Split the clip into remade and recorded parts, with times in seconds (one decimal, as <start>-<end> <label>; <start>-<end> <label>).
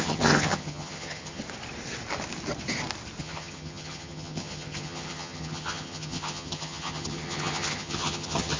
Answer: 0.0-1.4 remade; 1.4-3.2 recorded; 3.2-8.6 remade